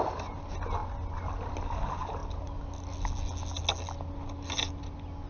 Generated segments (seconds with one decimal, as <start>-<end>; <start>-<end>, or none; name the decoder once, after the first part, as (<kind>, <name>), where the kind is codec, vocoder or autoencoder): none